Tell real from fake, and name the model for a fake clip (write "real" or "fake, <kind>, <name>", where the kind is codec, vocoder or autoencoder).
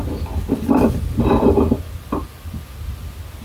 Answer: fake, vocoder, BigVGAN v2